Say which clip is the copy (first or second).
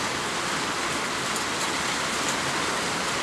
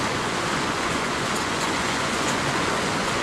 second